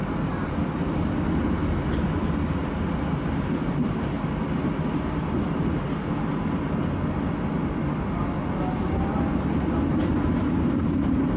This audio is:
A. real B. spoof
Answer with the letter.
A